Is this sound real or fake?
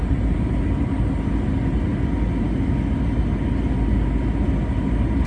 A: real